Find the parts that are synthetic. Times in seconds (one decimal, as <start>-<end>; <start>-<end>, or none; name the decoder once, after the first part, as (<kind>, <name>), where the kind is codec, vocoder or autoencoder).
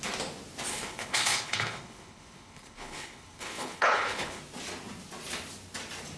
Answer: 0.7-4.4 (codec, HILCodec)